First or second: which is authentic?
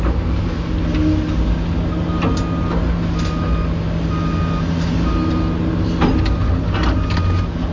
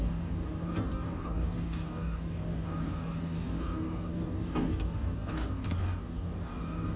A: first